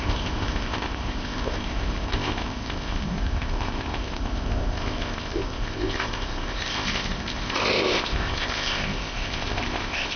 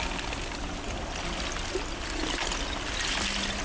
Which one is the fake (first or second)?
first